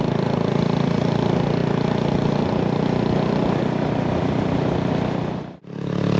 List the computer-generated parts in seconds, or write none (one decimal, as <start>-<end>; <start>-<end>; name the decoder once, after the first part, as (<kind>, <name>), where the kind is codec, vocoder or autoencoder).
none